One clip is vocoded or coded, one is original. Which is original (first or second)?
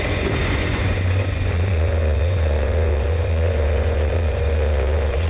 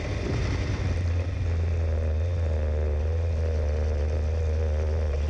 second